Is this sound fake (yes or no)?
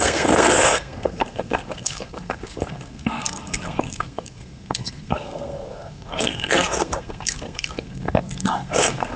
yes